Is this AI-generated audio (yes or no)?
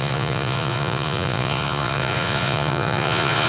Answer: yes